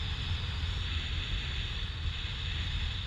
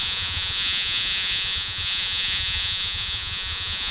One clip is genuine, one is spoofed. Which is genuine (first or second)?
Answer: first